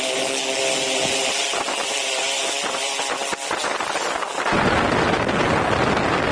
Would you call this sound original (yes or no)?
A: yes